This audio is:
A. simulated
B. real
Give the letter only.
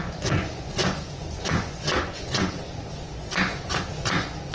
A